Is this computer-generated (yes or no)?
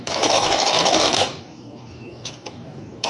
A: yes